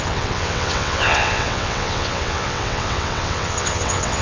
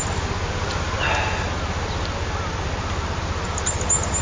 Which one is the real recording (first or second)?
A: second